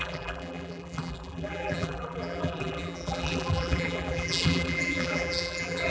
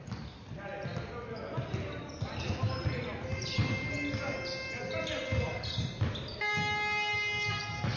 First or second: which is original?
second